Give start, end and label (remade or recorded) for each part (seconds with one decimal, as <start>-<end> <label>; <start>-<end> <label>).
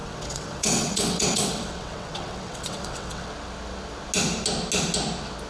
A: 0.0-3.3 remade; 3.3-5.5 recorded